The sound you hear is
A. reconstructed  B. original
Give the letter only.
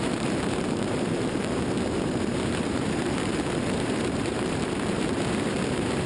A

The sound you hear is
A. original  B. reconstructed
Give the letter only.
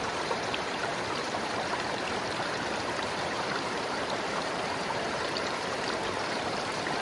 B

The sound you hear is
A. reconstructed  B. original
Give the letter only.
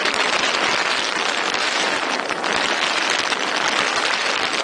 A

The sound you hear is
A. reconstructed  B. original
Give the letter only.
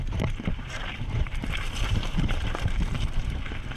A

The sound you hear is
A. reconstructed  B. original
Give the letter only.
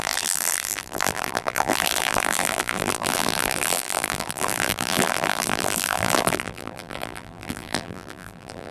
A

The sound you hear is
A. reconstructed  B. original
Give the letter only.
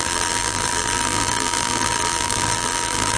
A